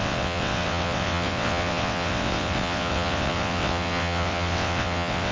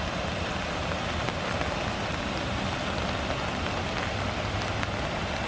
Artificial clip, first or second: first